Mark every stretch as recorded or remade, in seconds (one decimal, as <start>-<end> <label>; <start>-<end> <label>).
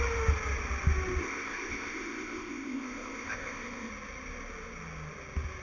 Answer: 0.0-1.2 recorded; 1.2-3.9 remade; 3.9-5.6 recorded